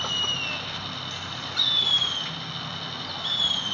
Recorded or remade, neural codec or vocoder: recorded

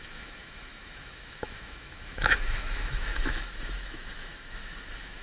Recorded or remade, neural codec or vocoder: remade, autoencoder, DAC-VAE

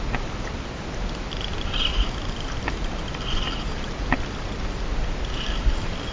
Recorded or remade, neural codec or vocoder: recorded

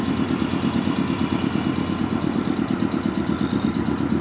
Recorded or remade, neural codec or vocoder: recorded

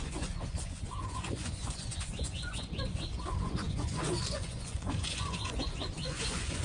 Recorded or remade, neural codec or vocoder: remade, vocoder, Vocos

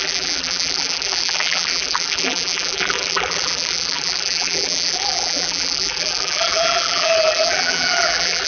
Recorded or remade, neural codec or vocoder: remade, vocoder, BigVGAN v2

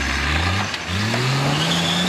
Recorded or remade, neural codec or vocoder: recorded